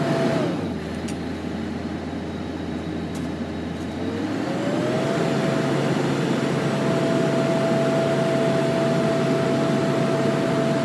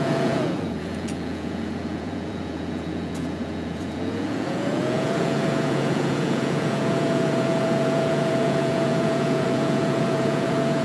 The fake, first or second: second